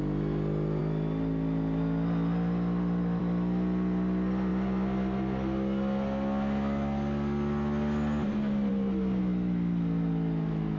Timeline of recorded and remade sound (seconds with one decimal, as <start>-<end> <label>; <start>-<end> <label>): 0.0-10.8 recorded